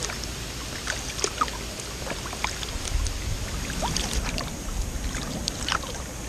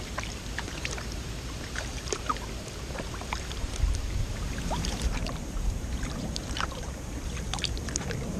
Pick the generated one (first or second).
second